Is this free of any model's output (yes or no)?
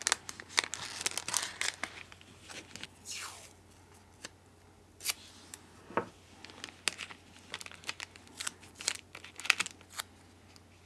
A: yes